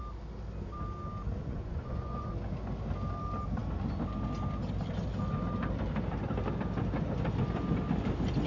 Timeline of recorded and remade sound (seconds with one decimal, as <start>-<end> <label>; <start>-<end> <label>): 0.0-1.4 recorded; 1.4-2.3 remade; 2.3-8.5 recorded